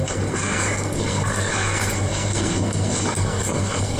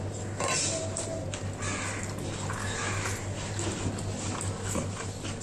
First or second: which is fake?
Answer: first